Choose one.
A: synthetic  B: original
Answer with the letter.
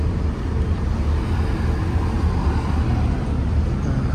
B